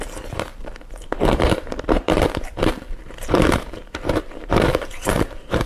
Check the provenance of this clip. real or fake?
fake